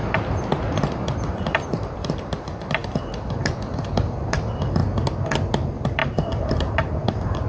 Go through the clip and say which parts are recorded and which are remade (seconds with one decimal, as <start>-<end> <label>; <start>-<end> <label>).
0.0-0.6 recorded; 0.6-4.8 remade; 4.8-5.5 recorded; 5.5-7.5 remade